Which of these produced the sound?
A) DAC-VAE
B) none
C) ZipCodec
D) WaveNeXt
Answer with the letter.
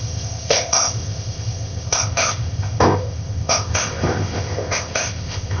C